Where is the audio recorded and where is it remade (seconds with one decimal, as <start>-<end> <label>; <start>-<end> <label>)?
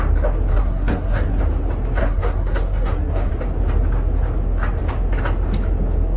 0.0-0.5 recorded; 0.5-1.4 remade; 1.4-2.0 recorded; 2.0-3.3 remade; 3.3-6.2 recorded